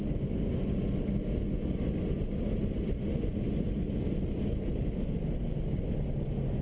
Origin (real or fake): real